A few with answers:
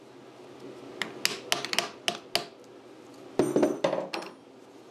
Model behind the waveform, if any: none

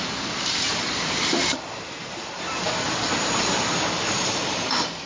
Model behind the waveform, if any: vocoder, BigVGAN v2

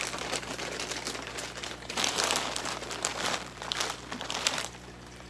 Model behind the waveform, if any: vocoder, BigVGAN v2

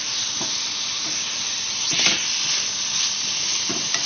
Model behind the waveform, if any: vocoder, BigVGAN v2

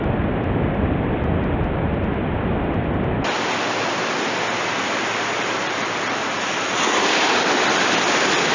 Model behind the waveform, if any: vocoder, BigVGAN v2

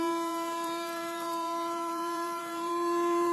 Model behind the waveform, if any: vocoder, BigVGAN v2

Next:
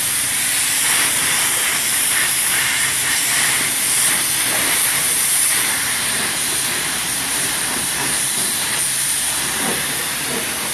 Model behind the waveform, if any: vocoder, BigVGAN v2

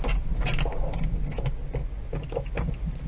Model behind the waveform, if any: none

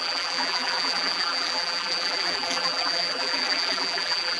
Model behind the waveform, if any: vocoder, BigVGAN v2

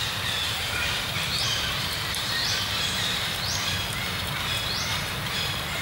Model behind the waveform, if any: vocoder, BigVGAN v2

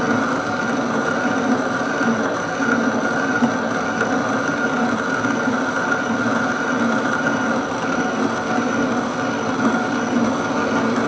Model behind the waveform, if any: none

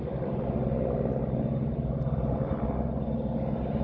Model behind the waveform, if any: none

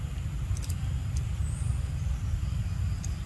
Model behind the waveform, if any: vocoder, BigVGAN v2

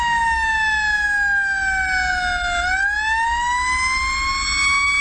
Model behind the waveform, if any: none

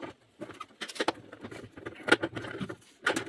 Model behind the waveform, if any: none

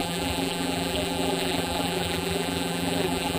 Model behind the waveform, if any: vocoder, BigVGAN v2